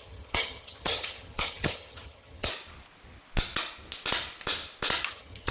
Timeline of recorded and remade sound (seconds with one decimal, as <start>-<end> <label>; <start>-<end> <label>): 0.0-2.5 remade; 2.5-5.1 recorded; 5.1-5.5 remade